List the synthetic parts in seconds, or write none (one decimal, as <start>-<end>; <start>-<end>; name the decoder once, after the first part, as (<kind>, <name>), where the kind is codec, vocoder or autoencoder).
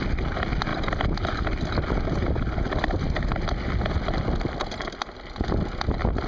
none